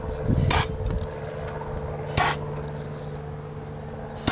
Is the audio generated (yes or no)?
no